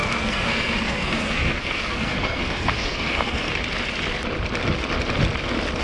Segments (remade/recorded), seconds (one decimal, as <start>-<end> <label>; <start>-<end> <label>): 0.0-3.5 remade; 3.5-5.8 recorded